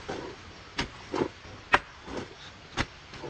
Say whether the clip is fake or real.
real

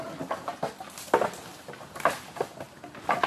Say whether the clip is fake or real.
real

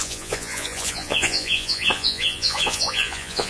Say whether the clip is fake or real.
fake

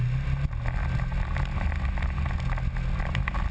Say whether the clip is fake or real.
real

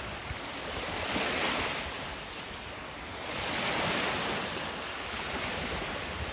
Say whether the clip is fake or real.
real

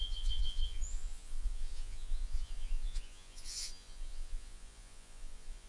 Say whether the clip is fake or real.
fake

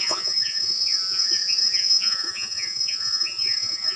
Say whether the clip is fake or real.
fake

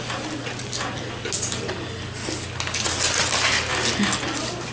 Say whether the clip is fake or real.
real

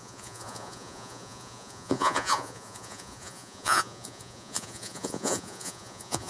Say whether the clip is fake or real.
fake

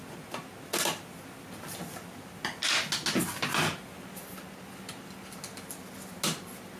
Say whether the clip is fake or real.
real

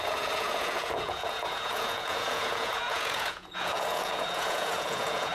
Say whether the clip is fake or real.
fake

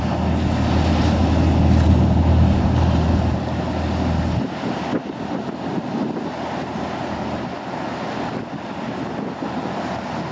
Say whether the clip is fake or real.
real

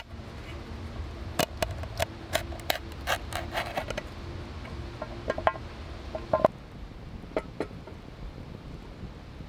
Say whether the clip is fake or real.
real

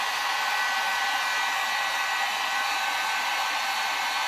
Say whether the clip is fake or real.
real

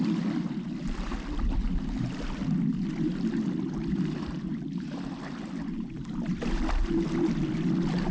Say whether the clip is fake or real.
real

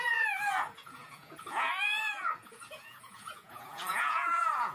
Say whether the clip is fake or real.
fake